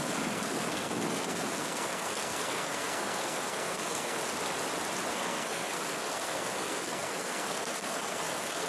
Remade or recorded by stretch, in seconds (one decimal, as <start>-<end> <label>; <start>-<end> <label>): 0.0-4.2 remade; 4.2-5.1 recorded; 5.1-8.7 remade